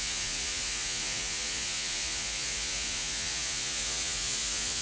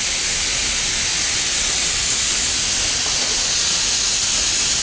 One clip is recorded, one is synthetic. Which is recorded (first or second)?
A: second